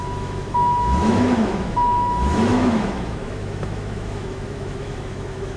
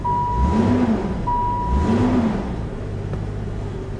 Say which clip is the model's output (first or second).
first